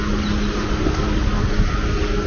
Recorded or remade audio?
recorded